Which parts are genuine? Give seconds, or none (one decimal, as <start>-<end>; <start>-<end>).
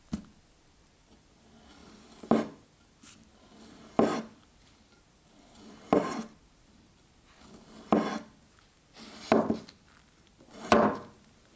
0.0-11.6